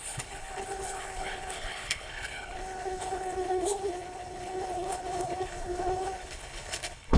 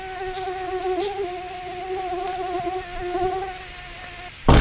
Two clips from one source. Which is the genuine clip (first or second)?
second